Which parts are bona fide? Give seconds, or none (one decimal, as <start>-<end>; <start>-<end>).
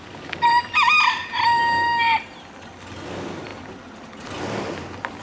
0.0-5.2